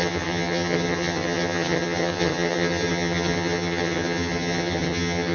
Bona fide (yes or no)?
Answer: no